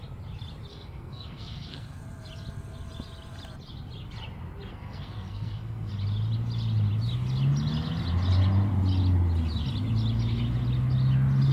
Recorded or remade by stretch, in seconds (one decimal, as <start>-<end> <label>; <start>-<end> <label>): 0.0-0.7 recorded; 0.7-2.0 remade; 2.0-4.7 recorded; 4.7-5.9 remade; 5.9-11.5 recorded